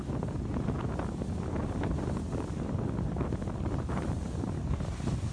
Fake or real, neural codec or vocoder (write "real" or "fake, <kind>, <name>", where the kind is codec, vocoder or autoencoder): real